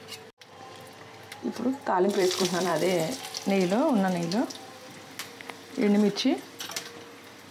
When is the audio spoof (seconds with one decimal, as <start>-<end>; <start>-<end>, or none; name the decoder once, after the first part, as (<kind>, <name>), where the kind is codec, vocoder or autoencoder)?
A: 0.0-2.7 (vocoder, BigVGAN v2); 6.2-7.5